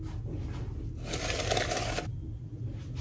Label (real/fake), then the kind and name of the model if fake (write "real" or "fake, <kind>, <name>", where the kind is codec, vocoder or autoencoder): real